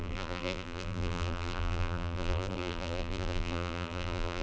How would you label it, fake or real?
fake